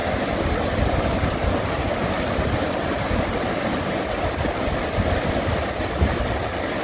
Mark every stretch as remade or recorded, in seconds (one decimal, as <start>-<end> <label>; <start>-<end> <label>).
0.0-6.8 recorded